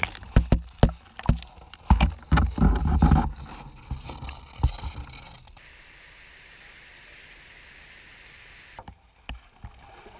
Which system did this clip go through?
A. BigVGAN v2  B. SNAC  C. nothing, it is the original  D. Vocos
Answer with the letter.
C